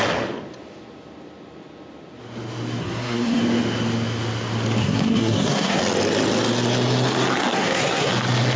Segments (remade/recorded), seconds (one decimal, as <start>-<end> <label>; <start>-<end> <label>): 0.0-2.8 recorded; 2.8-3.4 remade; 3.4-4.8 recorded; 4.8-5.8 remade; 5.8-7.5 recorded; 7.5-8.1 remade; 8.1-8.6 recorded